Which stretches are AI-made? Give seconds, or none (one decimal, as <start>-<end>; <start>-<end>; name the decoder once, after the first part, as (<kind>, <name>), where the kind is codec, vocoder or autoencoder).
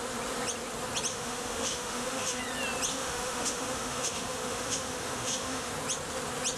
1.1-2.4 (autoencoder, DAC-VAE); 2.9-5.7